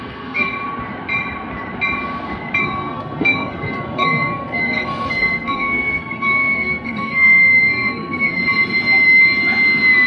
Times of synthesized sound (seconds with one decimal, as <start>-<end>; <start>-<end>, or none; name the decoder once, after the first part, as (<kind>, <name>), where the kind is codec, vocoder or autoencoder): 0.0-0.5 (codec, SNAC); 2.6-8.4